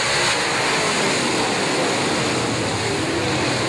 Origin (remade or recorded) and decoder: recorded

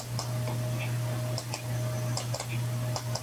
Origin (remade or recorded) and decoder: recorded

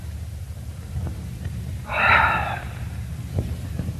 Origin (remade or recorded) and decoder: remade, vocoder, BigVGAN v2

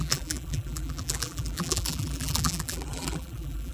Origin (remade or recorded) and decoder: remade, vocoder, BigVGAN v2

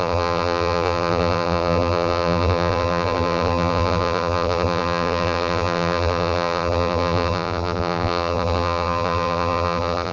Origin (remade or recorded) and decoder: remade, vocoder, BigVGAN v2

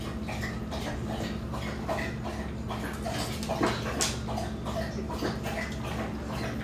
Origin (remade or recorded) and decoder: recorded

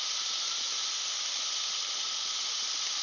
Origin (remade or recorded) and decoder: recorded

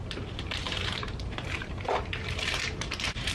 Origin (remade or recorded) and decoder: remade, vocoder, BigVGAN v2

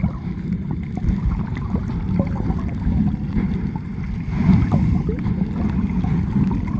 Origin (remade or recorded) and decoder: recorded